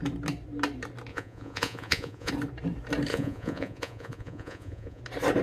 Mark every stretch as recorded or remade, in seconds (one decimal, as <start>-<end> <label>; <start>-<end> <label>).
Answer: 0.0-1.1 recorded; 1.1-2.3 remade; 2.3-3.1 recorded; 3.1-5.0 remade; 5.0-5.4 recorded